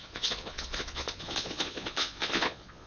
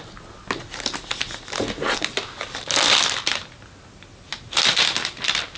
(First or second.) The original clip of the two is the second